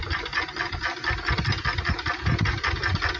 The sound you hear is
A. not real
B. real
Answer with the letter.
B